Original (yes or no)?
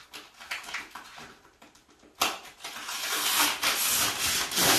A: yes